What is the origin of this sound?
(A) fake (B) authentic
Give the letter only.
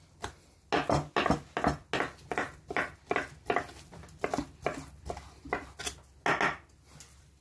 B